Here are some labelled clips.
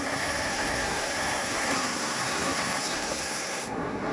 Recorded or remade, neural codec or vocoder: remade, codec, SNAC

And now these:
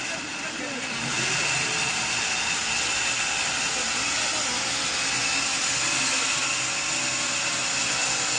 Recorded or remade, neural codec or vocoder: recorded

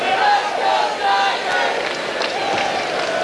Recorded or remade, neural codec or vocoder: recorded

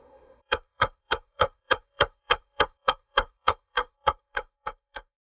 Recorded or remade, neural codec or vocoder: remade, codec, SNAC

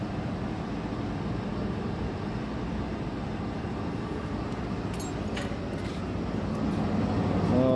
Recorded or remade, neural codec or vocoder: recorded